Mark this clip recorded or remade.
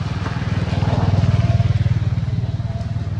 recorded